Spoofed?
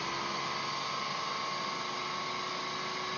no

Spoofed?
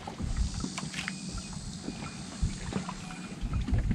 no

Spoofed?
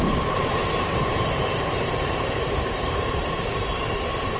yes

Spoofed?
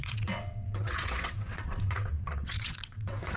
yes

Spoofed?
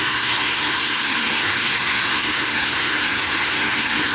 yes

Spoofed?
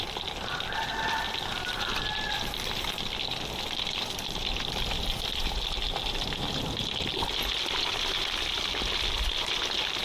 no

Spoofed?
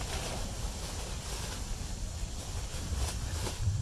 no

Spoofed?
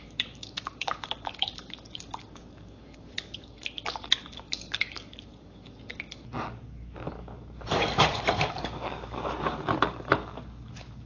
yes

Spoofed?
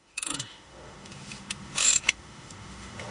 yes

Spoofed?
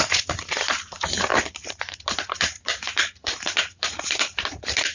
yes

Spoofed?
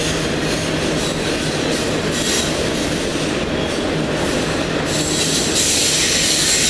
no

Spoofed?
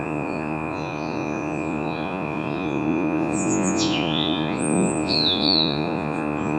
yes